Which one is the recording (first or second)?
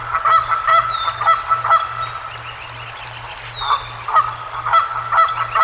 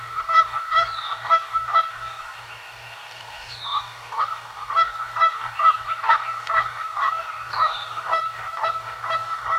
first